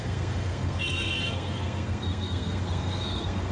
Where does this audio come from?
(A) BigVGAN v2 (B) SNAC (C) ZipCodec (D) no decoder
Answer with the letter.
B